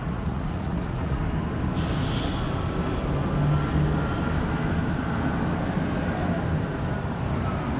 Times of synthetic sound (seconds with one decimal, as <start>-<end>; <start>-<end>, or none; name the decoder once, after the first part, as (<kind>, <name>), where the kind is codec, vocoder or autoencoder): 0.0-1.2 (vocoder, Vocos)